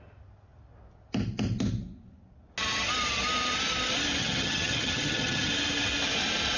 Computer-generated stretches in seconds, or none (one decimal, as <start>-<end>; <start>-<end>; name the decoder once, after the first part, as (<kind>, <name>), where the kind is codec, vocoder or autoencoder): 4.2-5.5 (vocoder, HiFi-GAN)

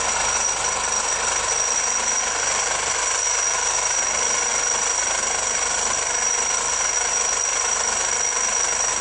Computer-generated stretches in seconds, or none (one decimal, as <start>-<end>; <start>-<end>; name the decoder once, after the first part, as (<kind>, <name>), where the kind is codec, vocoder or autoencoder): none

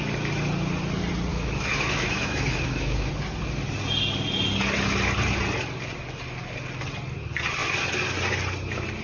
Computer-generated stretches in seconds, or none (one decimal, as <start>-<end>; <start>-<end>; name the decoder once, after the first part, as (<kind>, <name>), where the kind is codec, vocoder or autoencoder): 1.3-3.1 (autoencoder, DAC-VAE)

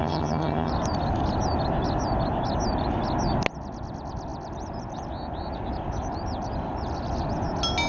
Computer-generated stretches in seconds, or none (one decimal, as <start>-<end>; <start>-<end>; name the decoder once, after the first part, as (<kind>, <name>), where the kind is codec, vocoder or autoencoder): 0.0-0.7 (vocoder, HiFi-GAN)

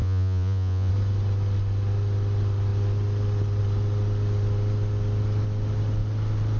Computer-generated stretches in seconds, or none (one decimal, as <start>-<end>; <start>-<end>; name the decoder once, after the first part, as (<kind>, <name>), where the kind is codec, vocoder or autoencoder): 0.0-0.9 (vocoder, Vocos)

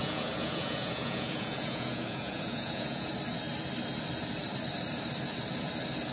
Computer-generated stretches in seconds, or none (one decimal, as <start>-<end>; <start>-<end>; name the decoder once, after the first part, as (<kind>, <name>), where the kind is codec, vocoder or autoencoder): 0.0-3.1 (vocoder, Vocos)